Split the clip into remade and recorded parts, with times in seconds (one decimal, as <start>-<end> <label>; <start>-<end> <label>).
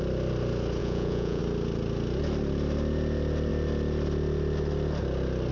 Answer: 0.0-0.8 recorded; 0.8-1.4 remade; 1.4-5.5 recorded